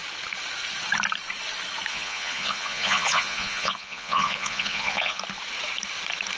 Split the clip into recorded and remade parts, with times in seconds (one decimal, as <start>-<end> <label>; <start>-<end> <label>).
0.0-1.9 recorded; 1.9-5.2 remade; 5.2-6.4 recorded